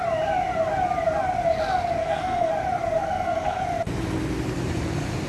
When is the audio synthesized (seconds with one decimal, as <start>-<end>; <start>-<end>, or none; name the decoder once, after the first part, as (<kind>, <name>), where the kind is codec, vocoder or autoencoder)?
2.0-2.5 (codec, SNAC); 3.0-3.6